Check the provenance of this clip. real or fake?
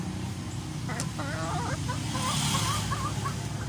real